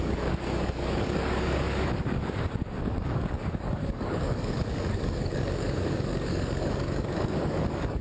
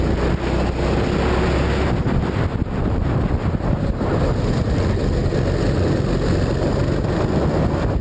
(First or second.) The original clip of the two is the second